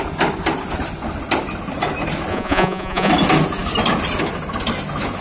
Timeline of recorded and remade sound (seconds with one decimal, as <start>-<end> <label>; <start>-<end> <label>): 0.0-2.3 recorded; 2.3-3.1 remade; 3.1-5.2 recorded